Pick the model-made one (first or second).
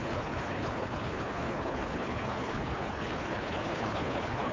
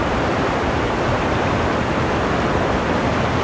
first